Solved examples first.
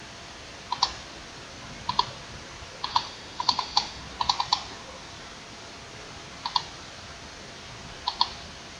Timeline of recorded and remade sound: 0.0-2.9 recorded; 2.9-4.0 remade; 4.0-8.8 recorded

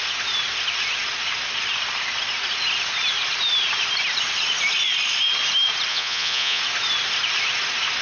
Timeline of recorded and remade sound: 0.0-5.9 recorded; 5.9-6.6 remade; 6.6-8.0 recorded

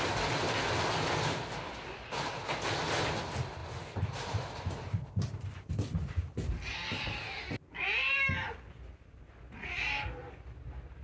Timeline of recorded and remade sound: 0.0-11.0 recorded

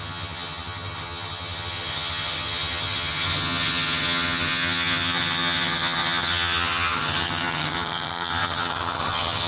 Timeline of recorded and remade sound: 0.0-9.5 remade

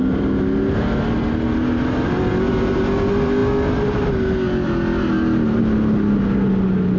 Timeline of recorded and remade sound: 0.0-7.0 recorded

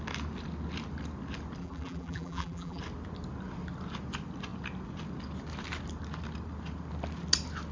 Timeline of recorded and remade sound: 0.0-1.6 recorded; 1.6-2.8 remade; 2.8-7.7 recorded

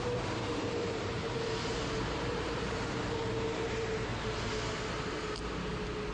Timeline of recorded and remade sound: 0.0-1.2 remade; 1.2-2.1 recorded; 2.1-4.1 remade; 4.1-6.1 recorded

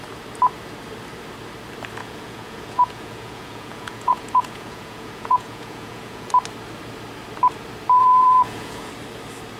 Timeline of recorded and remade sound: 0.0-2.0 recorded; 2.0-6.3 remade; 6.3-8.0 recorded; 8.0-8.9 remade; 8.9-9.6 recorded